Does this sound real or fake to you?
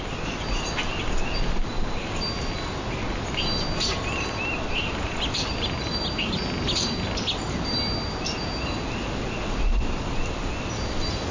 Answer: real